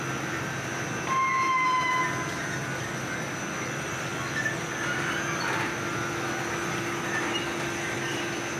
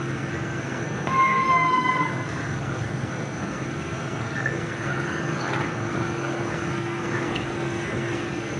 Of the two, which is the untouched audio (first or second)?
first